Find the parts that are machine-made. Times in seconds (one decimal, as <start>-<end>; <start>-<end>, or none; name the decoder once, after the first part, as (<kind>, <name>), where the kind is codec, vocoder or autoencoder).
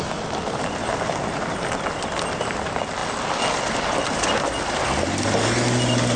none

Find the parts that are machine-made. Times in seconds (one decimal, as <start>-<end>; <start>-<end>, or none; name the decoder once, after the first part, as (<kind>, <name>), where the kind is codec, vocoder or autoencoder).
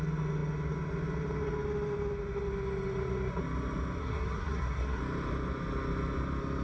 4.0-5.0 (codec, SNAC)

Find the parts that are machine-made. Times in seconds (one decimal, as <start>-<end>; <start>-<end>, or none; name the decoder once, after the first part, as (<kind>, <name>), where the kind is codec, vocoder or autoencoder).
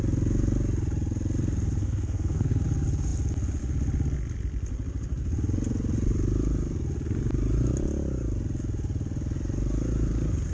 1.8-2.6 (codec, SNAC)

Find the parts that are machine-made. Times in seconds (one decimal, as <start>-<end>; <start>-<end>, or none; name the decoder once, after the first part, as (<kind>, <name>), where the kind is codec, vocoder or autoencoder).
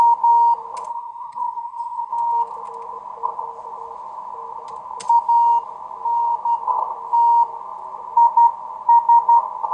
0.9-2.1 (codec, SNAC)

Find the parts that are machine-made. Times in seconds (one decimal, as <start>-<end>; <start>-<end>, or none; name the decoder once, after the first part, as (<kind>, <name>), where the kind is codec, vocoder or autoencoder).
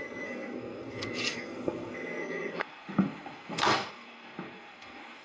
0.0-5.2 (codec, SNAC)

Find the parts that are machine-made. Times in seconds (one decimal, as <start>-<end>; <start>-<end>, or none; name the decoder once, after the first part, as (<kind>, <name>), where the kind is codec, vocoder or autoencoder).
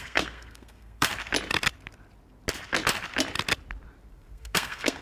0.0-1.1 (codec, SNAC); 4.1-5.0